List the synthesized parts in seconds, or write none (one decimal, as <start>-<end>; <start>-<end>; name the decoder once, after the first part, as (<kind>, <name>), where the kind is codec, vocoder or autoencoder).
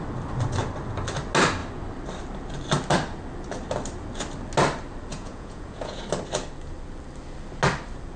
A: 5.1-6.0 (vocoder, Vocos)